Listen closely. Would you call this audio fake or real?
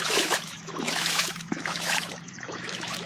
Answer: fake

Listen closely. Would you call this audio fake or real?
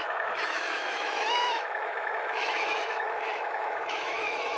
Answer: fake